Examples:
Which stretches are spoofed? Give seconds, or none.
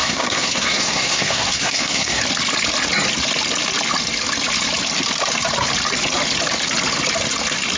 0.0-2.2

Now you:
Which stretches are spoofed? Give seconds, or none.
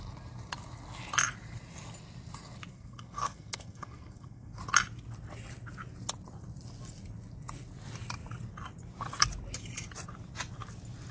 2.7-4.6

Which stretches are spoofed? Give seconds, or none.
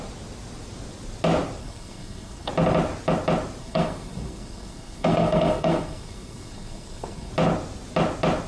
1.6-2.5; 3.6-7.3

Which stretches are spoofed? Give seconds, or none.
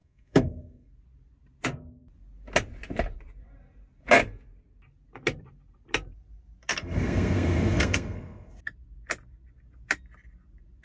0.0-0.9; 6.7-8.5